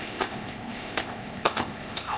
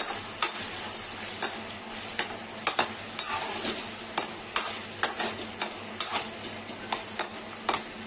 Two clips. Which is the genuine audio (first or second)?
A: second